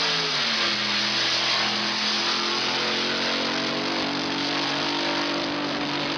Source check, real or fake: real